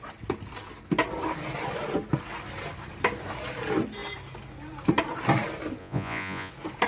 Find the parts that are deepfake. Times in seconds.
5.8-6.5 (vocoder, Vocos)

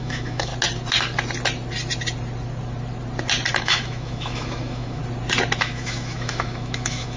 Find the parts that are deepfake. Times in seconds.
0.0-0.5 (autoencoder, DAC-VAE); 3.6-5.0; 5.6-7.2

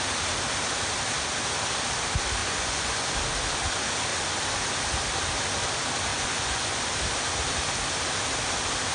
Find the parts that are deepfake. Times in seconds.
2.4-3.1 (vocoder, Vocos); 6.1-6.8